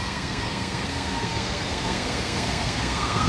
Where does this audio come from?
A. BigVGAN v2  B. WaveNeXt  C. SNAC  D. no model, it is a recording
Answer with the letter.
C